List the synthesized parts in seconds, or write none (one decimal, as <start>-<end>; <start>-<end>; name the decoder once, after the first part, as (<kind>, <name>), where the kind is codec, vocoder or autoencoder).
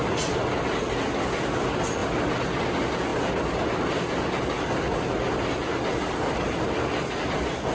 2.0-2.6 (vocoder, BigVGAN v2)